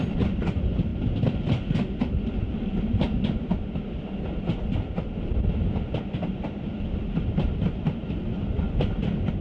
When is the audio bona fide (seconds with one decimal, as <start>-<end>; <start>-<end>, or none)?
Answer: 0.0-9.4